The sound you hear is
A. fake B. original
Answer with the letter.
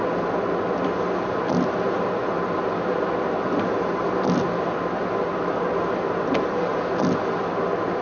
B